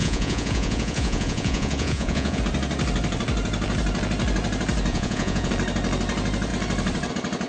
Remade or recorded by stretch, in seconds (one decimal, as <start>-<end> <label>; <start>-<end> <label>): 0.0-2.4 remade; 2.4-4.9 recorded; 4.9-5.5 remade; 5.5-7.5 recorded